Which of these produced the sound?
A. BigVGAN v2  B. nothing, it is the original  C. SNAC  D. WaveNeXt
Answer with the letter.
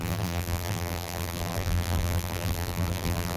A